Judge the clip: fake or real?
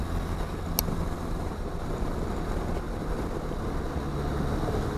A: real